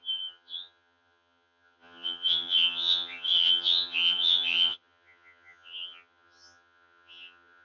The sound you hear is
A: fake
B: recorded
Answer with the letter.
A